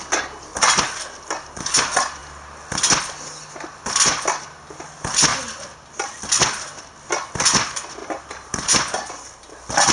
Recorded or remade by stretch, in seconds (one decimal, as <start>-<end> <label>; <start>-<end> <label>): 0.0-8.0 recorded; 8.0-9.1 remade; 9.1-9.9 recorded